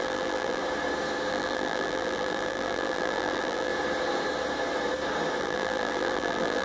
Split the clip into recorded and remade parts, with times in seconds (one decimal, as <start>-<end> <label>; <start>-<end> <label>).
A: 0.0-0.6 remade; 0.6-1.3 recorded; 1.3-3.7 remade; 3.7-5.4 recorded; 5.4-6.6 remade